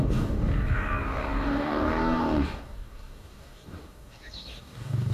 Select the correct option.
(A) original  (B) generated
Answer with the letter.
B